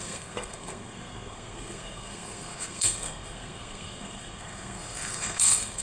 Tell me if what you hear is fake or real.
fake